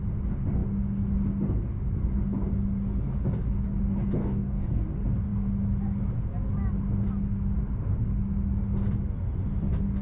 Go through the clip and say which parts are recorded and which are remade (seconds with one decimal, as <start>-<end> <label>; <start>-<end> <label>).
0.0-4.2 recorded; 4.2-4.8 remade; 4.8-10.0 recorded

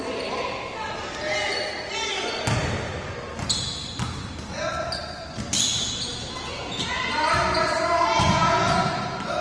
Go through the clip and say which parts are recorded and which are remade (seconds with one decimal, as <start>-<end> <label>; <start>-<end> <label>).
0.0-6.1 recorded; 6.1-7.0 remade; 7.0-8.1 recorded; 8.1-8.7 remade; 8.7-9.4 recorded

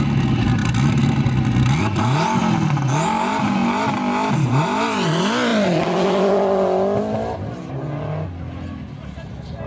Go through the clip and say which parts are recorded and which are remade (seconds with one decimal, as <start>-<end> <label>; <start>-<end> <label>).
0.0-9.7 recorded

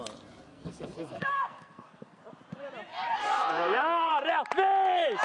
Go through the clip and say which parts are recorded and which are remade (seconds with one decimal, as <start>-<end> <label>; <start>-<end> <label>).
0.0-0.5 recorded; 0.5-2.2 remade; 2.2-2.9 recorded; 2.9-4.1 remade; 4.1-5.2 recorded

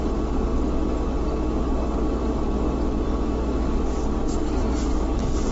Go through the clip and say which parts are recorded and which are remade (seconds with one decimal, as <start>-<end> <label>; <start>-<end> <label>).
0.0-5.5 recorded